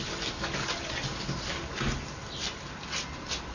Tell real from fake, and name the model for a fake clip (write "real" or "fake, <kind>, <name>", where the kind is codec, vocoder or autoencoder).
real